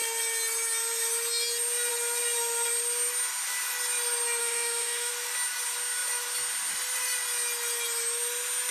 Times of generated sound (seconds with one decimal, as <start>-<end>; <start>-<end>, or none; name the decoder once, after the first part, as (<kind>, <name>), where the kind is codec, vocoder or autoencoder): 4.4-5.1 (autoencoder, DAC-VAE)